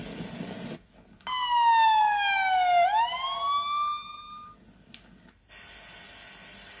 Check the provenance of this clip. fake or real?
real